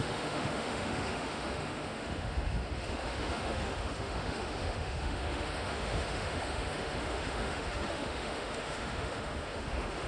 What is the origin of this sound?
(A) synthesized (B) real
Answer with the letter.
A